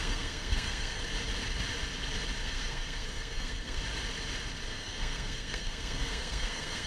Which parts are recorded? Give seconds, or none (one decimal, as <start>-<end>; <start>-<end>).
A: 1.0-2.4; 3.8-4.7